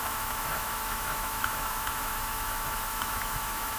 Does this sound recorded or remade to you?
remade